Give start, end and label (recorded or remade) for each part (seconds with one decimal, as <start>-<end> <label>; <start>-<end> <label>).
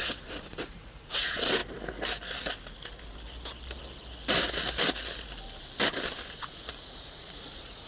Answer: 0.0-1.6 remade; 1.6-6.3 recorded; 6.3-7.9 remade